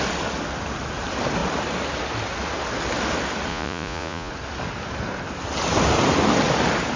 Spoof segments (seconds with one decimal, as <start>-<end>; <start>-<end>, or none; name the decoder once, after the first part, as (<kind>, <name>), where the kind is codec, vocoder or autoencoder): 3.5-4.3 (vocoder, Vocos)